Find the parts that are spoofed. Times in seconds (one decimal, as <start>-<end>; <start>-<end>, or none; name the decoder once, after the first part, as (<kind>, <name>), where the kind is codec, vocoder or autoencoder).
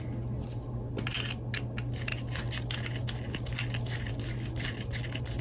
none